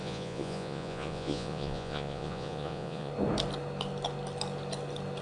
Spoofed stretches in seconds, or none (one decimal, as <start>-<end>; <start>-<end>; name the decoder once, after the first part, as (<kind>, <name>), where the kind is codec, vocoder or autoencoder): 0.0-3.1 (vocoder, Vocos)